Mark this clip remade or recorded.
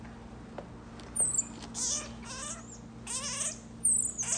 recorded